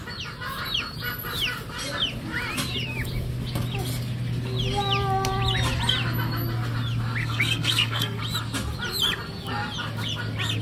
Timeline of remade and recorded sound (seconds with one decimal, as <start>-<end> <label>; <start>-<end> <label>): 0.0-7.2 recorded; 7.2-8.2 remade; 8.2-10.6 recorded